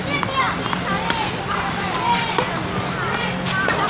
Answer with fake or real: real